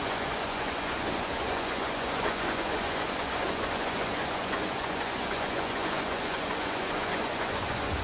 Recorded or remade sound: remade